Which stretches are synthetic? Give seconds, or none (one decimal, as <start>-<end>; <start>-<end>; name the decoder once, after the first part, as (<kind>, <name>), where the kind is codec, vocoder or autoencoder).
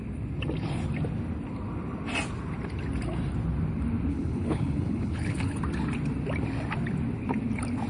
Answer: 4.1-5.6 (codec, HILCodec)